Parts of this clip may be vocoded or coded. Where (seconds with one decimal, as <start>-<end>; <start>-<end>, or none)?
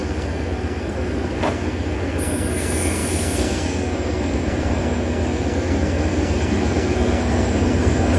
0.0-8.2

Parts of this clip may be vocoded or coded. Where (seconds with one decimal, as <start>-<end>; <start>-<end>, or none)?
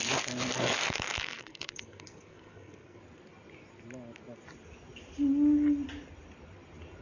0.5-3.0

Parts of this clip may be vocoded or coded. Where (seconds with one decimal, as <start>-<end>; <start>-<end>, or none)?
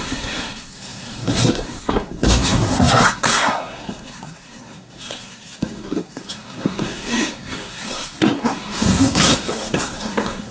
0.0-10.5